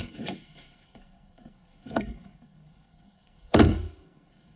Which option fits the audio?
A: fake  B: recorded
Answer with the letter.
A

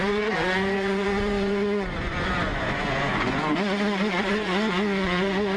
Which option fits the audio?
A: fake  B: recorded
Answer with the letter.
A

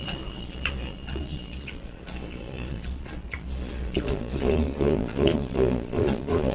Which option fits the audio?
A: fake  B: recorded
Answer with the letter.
A